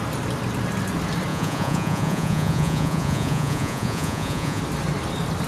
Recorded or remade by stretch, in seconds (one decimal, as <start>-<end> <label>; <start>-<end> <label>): 0.0-1.3 recorded; 1.3-4.6 remade; 4.6-5.5 recorded